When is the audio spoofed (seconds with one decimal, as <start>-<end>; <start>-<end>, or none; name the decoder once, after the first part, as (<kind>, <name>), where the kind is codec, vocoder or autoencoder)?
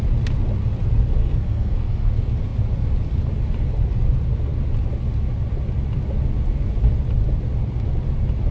1.2-2.1 (codec, SNAC)